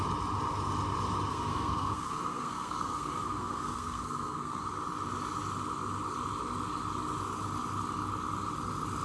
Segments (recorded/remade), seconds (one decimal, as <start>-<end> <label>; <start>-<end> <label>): 0.0-1.3 recorded; 1.3-4.6 remade; 4.6-9.0 recorded